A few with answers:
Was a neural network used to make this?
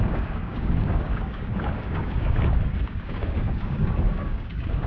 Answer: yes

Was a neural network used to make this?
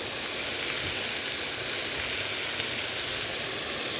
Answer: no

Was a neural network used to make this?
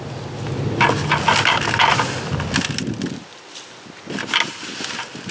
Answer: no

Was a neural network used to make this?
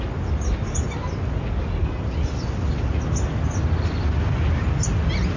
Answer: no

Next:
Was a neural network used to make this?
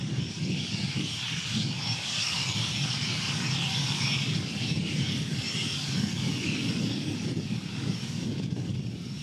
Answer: yes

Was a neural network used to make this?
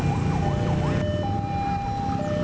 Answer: no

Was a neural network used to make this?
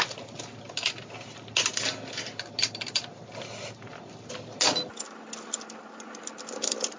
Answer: no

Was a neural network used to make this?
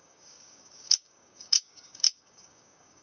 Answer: yes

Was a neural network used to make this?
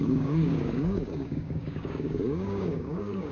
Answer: yes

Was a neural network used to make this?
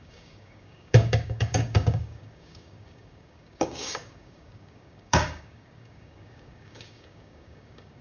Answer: yes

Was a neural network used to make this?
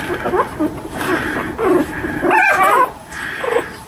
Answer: no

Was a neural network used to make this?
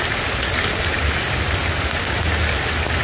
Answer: no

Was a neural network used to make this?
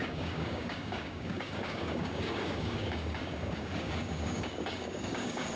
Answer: yes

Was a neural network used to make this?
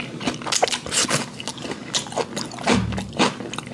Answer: no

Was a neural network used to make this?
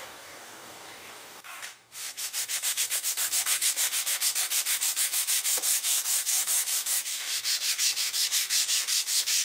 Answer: yes